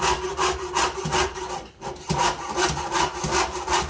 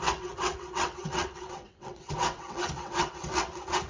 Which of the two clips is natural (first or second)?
first